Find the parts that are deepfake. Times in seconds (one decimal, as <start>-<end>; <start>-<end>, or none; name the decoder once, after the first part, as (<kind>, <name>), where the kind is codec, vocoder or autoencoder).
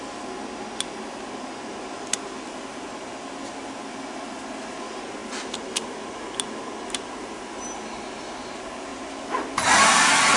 none